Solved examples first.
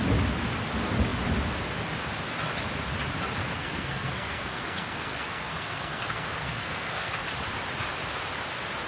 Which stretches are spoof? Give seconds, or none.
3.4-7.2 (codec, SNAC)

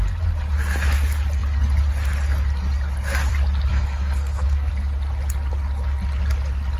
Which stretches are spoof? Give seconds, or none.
3.7-4.7 (codec, SNAC)

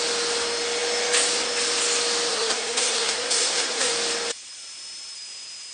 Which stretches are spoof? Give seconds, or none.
2.3-3.9 (codec, SNAC)

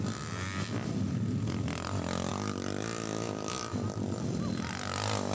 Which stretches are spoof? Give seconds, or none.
none

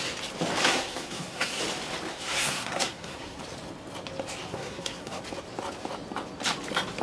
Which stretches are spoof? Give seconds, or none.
0.6-1.6 (codec, SNAC); 2.1-3.4; 4.5-5.2

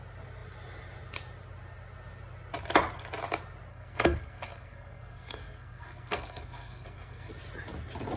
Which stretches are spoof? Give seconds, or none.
3.7-7.3 (codec, SNAC)